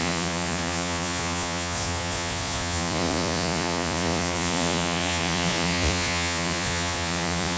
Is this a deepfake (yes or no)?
yes